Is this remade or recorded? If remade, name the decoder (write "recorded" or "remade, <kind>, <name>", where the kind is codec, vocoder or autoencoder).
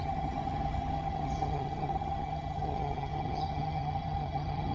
remade, vocoder, HiFi-GAN